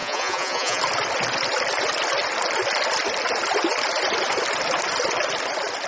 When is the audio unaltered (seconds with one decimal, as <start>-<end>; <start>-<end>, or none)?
0.8-5.9